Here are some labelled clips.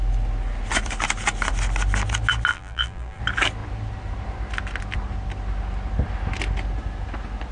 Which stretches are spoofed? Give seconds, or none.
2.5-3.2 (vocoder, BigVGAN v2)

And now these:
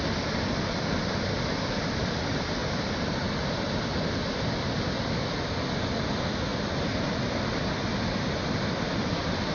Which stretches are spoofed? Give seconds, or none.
none

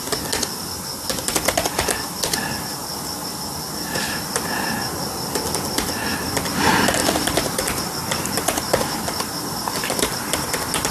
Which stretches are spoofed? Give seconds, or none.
7.0-10.1 (vocoder, BigVGAN v2)

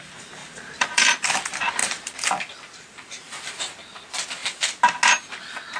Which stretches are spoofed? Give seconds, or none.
0.4-1.3 (vocoder, BigVGAN v2); 1.8-3.6

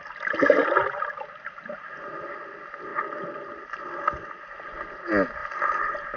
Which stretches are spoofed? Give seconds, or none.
2.9-4.6 (vocoder, BigVGAN v2); 5.4-6.2